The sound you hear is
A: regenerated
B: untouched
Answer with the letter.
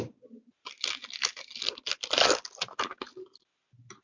B